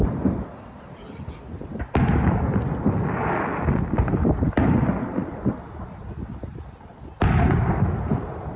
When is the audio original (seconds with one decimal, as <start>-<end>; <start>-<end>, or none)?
0.0-8.6